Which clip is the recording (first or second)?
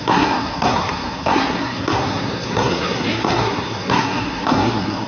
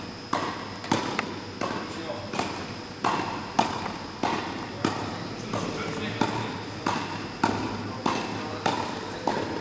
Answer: second